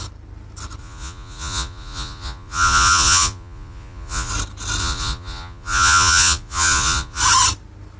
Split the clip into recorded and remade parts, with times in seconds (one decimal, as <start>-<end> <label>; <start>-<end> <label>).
0.0-0.8 recorded; 0.8-4.3 remade; 4.3-4.8 recorded; 4.8-7.2 remade; 7.2-8.0 recorded